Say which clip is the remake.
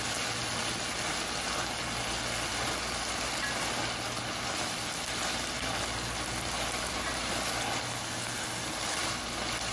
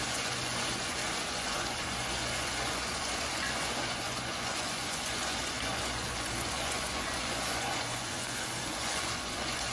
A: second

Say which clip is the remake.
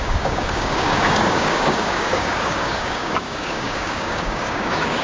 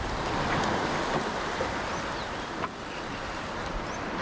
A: first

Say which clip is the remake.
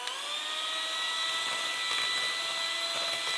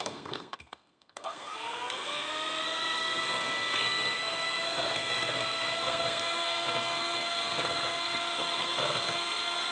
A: second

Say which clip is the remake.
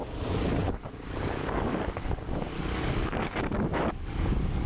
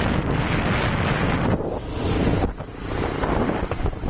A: first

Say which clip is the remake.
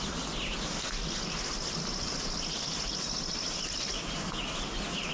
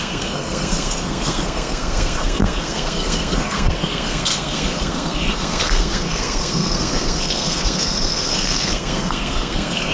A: second